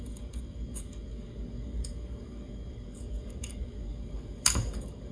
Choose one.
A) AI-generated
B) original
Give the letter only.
A